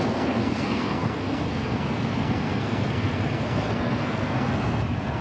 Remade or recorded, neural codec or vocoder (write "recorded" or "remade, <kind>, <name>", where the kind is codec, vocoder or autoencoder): remade, codec, SNAC